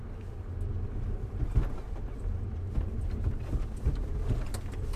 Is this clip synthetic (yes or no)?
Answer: no